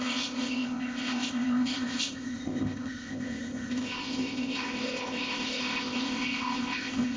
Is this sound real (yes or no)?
no